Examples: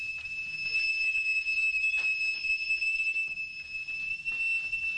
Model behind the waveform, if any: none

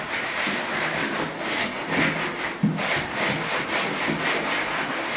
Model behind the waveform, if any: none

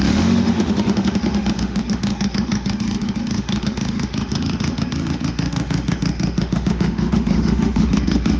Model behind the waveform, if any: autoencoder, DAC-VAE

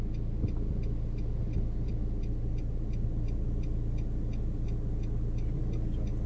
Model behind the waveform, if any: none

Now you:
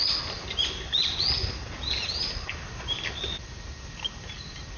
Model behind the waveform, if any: none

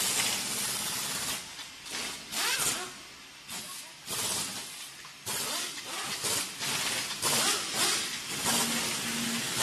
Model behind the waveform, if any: none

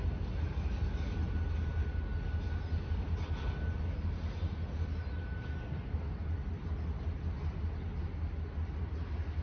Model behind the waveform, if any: none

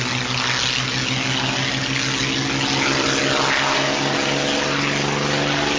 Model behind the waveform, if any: none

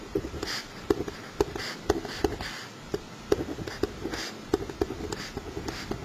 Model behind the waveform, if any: none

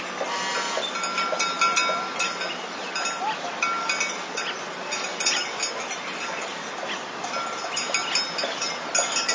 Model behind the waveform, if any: none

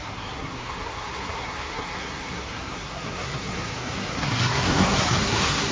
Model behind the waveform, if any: codec, SNAC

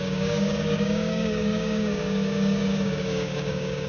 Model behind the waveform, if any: codec, DAC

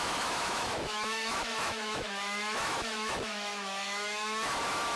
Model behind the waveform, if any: autoencoder, DAC-VAE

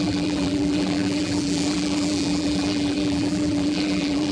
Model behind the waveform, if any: vocoder, BigVGAN v2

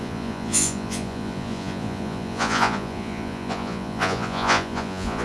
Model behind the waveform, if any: vocoder, Vocos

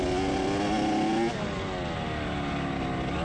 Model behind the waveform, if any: none